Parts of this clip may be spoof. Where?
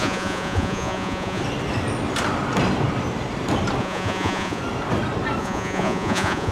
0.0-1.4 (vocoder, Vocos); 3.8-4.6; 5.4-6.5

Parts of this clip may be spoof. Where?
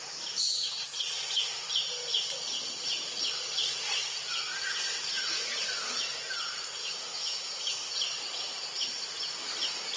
6.8-7.9 (autoencoder, DAC-VAE)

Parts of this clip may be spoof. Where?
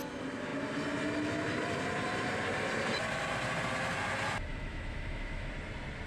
4.5-5.5 (autoencoder, DAC-VAE)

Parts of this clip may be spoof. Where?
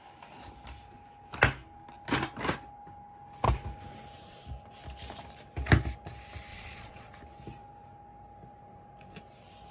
6.5-7.1 (vocoder, Vocos)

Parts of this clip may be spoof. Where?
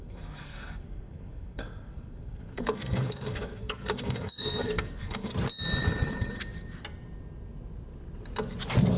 0.0-5.3 (codec, SNAC)